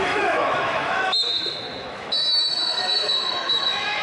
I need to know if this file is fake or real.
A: fake